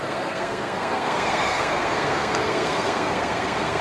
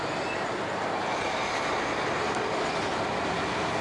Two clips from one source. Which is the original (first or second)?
second